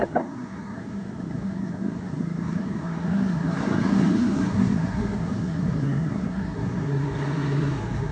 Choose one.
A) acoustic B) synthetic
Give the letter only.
B